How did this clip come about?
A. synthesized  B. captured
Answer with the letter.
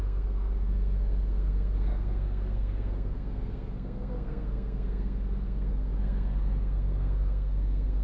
A